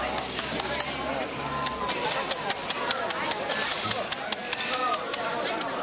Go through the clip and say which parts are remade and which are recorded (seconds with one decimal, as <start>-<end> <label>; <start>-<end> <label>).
0.0-5.8 recorded